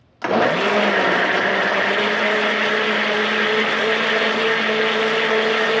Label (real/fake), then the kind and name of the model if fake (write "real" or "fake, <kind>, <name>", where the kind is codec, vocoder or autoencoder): real